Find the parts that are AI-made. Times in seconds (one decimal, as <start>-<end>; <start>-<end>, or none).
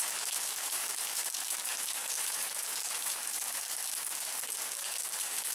0.0-5.5